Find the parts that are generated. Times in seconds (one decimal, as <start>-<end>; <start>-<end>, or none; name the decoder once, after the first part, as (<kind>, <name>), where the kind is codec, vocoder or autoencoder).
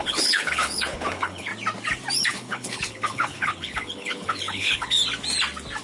0.0-1.5 (codec, HILCodec); 2.3-5.0